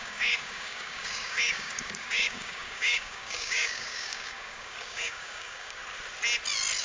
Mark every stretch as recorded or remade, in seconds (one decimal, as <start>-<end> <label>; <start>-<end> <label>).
0.0-5.8 remade; 5.8-6.8 recorded

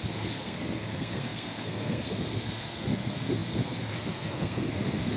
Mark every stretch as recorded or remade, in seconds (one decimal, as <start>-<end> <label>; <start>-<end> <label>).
0.0-5.2 remade

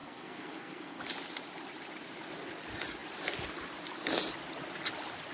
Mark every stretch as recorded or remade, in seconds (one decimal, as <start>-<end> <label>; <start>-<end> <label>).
0.0-1.0 remade; 1.0-5.3 recorded

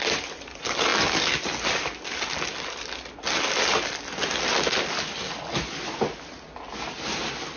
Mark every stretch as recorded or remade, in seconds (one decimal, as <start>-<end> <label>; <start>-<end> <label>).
0.0-7.6 recorded

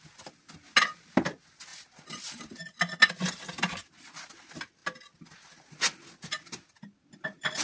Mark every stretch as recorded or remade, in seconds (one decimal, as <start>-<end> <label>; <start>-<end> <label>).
0.0-7.6 recorded

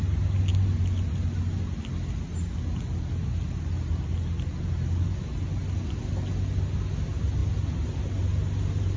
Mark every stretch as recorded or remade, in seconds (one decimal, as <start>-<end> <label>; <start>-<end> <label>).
0.0-9.0 recorded